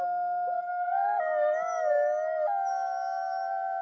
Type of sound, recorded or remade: recorded